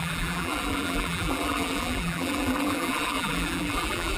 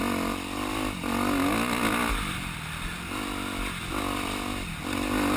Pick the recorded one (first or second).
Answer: second